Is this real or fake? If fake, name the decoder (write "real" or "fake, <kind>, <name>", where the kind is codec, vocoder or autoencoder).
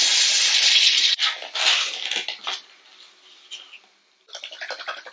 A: real